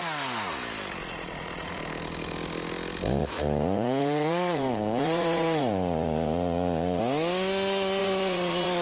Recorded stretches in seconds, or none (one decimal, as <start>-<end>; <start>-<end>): 0.0-1.0; 1.8-3.2; 7.0-8.0